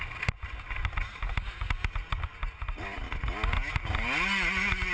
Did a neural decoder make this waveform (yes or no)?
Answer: no